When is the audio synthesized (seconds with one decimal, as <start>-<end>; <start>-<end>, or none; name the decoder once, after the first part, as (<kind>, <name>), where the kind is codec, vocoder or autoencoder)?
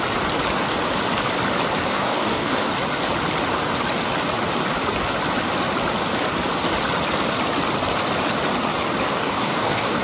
1.9-2.7 (codec, DAC); 9.1-10.0